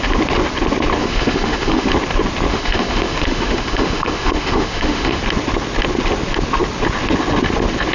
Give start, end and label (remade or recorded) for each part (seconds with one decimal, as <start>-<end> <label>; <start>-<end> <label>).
0.0-1.0 recorded; 1.0-1.9 remade; 1.9-2.5 recorded; 2.5-5.2 remade; 5.2-7.9 recorded